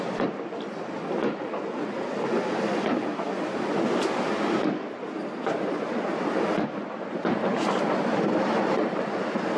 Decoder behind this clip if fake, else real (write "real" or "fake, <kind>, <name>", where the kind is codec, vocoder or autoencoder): real